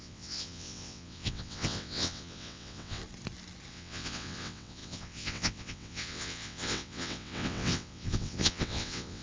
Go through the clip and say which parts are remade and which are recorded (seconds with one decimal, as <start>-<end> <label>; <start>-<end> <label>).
0.0-3.0 remade; 3.0-3.7 recorded; 3.7-9.2 remade